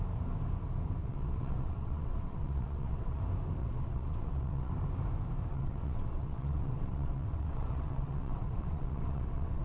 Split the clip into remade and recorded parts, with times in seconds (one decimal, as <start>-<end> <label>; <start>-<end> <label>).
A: 0.0-1.0 recorded; 1.0-3.2 remade; 3.2-3.6 recorded; 3.6-4.7 remade; 4.7-5.5 recorded; 5.5-9.6 remade